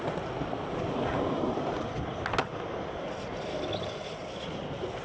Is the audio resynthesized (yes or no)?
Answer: no